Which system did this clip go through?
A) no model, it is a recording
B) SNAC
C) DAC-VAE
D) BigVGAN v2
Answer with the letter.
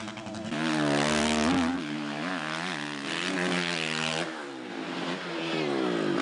A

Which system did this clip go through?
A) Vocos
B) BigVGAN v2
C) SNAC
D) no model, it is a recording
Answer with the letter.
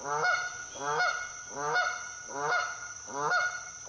D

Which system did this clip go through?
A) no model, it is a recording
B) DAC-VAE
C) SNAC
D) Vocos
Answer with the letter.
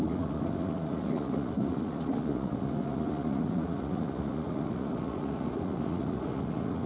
D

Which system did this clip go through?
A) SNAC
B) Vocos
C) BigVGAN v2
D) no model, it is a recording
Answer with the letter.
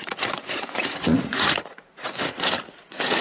B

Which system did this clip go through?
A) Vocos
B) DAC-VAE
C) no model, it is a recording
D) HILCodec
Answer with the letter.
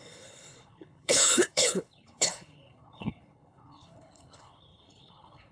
D